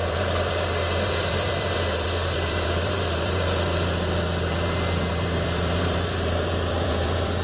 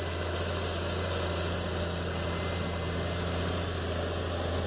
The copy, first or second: first